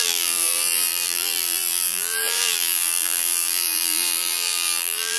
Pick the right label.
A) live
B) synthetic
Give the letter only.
B